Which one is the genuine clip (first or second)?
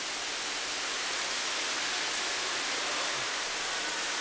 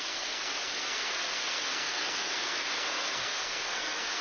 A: first